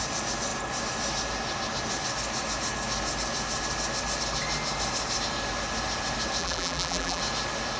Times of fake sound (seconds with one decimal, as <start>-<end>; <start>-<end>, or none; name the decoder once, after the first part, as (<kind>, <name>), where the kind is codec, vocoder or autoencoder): 6.4-7.2 (vocoder, BigVGAN v2)